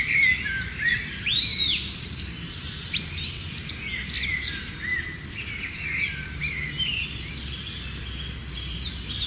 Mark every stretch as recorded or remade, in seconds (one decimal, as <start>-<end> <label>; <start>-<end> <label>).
0.0-1.5 recorded; 1.5-3.5 remade; 3.5-4.9 recorded; 4.9-8.0 remade; 8.0-8.4 recorded; 8.4-9.3 remade